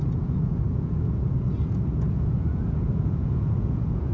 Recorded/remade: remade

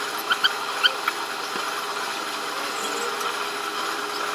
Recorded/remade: recorded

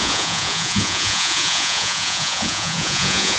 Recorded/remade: remade